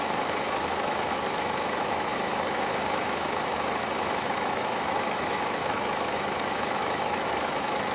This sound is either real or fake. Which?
fake